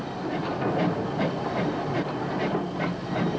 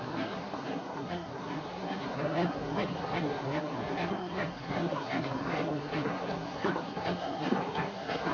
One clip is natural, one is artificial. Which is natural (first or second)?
first